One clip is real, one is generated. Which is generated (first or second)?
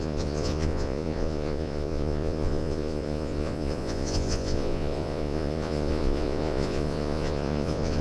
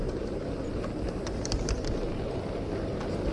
first